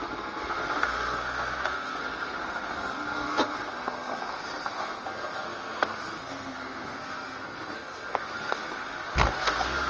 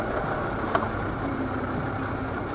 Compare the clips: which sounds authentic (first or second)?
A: second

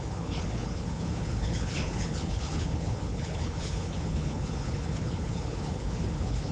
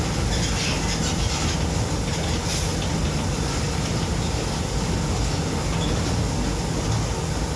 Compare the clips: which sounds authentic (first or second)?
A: second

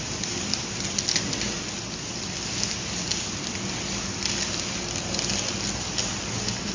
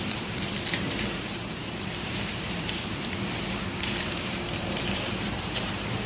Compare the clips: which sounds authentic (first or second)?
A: first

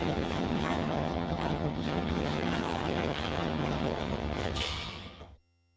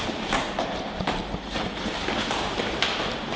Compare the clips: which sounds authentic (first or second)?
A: second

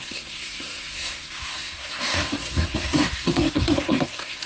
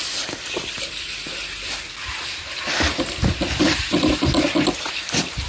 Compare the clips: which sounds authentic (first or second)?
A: second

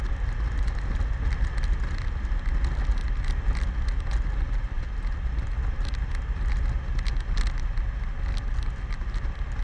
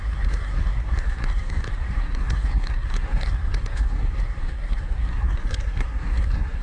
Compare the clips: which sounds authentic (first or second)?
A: first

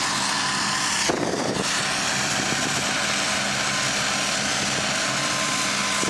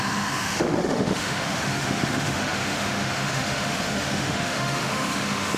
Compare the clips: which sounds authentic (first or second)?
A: first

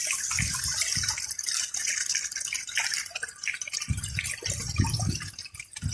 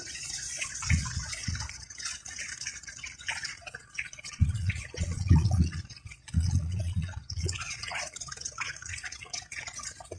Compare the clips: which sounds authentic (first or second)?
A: first